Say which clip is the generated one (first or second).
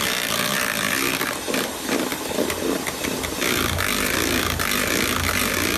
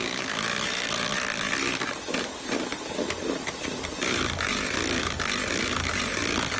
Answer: second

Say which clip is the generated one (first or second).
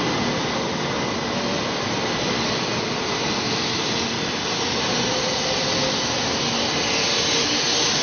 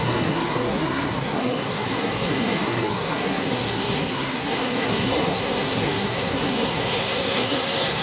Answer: second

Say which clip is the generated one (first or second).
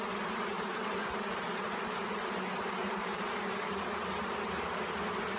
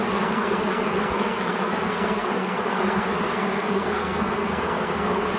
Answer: second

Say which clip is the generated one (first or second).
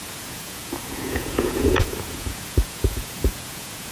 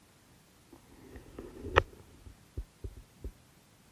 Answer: first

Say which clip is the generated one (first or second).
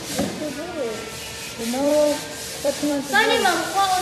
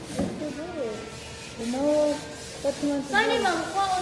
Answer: first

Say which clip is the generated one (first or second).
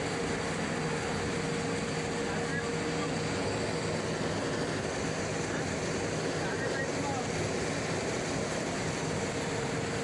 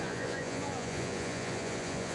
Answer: second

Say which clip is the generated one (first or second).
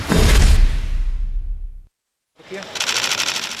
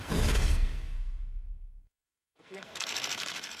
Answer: second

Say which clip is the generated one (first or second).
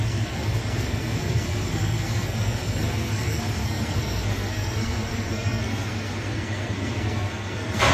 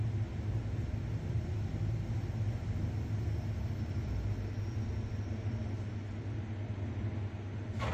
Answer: first